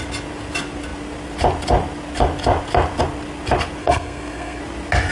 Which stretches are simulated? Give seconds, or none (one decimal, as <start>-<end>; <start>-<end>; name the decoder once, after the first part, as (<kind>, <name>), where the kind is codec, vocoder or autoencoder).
3.8-4.6 (codec, SNAC)